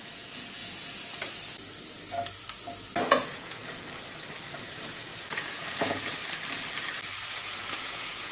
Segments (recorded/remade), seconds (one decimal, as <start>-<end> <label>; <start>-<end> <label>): 0.0-0.6 remade; 0.6-3.0 recorded; 3.0-3.6 remade; 3.6-4.6 recorded; 4.6-6.2 remade; 6.2-7.6 recorded; 7.6-8.3 remade